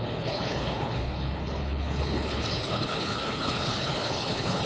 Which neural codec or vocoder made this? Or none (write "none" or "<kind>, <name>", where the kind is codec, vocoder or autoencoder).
codec, HILCodec